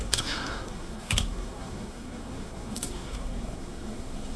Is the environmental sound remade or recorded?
remade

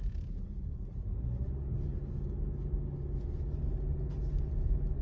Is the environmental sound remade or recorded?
recorded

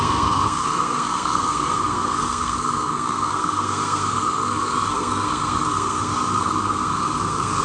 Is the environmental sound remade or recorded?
remade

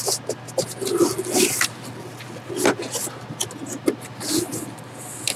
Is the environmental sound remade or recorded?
recorded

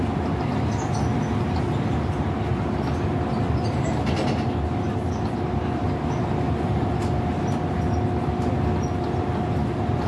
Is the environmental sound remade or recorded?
recorded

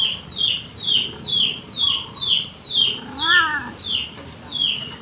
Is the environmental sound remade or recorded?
recorded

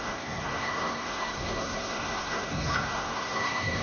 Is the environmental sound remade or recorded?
remade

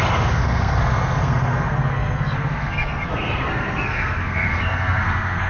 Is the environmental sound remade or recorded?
remade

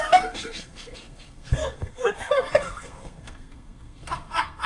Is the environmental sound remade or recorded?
remade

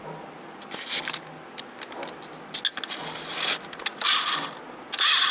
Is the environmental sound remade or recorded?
recorded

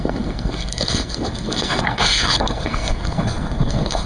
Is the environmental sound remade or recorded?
remade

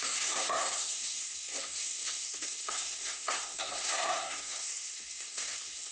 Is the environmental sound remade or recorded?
remade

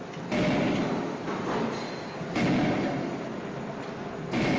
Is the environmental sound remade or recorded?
recorded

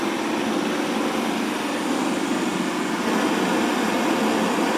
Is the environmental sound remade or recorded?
recorded